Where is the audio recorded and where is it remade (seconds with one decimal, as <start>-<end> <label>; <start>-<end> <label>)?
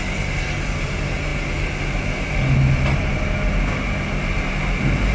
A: 0.0-5.1 recorded